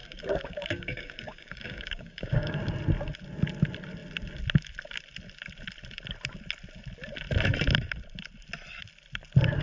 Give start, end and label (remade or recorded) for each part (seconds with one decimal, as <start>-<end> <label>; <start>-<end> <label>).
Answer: 0.0-2.6 remade; 2.6-9.6 recorded